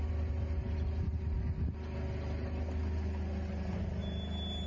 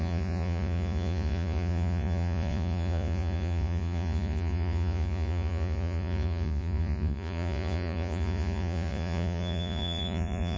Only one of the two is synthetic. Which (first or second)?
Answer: second